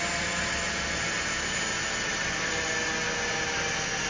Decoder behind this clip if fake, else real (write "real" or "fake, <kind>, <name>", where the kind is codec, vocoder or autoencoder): real